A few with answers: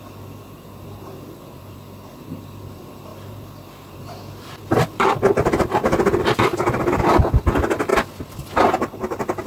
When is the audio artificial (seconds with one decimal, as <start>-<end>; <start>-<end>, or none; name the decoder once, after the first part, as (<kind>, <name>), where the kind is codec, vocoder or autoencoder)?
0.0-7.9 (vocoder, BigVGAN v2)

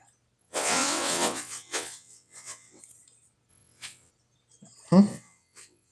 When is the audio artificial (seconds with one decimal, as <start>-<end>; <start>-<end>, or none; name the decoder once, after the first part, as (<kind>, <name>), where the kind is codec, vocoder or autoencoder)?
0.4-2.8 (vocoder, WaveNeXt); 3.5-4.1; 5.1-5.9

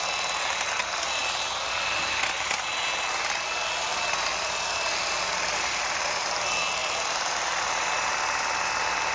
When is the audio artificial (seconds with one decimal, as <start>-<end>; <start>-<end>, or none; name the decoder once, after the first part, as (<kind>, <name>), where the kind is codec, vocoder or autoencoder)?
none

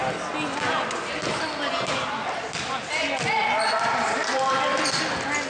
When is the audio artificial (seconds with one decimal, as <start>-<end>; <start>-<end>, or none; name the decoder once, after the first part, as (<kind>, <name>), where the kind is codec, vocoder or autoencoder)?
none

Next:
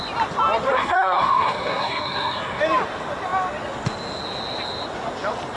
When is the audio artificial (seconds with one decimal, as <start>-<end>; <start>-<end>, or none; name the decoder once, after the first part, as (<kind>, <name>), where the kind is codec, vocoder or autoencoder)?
0.7-2.6 (codec, SNAC)

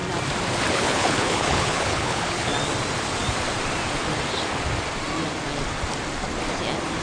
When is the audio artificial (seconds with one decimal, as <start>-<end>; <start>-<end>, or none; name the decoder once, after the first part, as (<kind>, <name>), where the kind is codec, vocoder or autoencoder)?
0.7-2.5 (codec, HILCodec)